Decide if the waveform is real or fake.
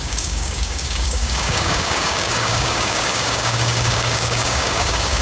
fake